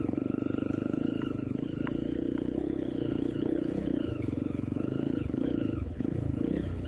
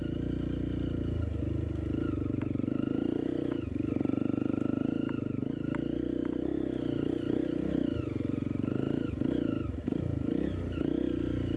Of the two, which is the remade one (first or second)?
first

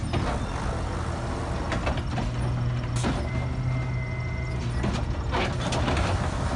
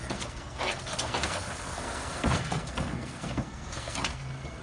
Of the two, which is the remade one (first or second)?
second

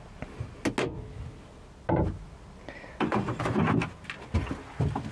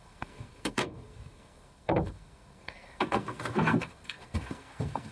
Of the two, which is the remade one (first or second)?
second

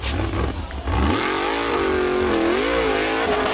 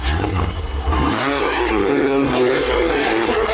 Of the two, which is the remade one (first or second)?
second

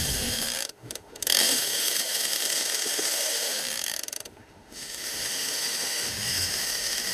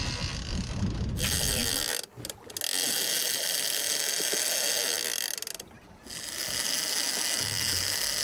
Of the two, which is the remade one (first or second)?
first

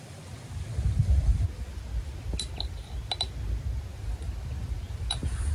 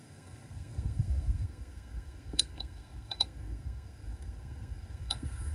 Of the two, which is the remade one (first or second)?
second